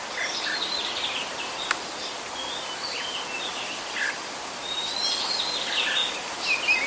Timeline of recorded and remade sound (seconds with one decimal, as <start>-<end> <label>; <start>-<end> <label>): 0.0-6.9 recorded